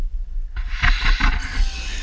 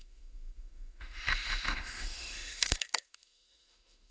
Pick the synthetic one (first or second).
second